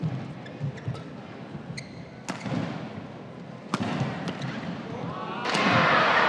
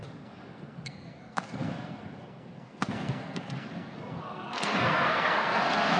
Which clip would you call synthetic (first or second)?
second